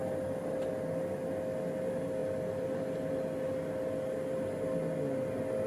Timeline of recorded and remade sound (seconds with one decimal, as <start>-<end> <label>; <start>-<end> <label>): 0.0-2.2 recorded; 2.2-3.1 remade; 3.1-5.7 recorded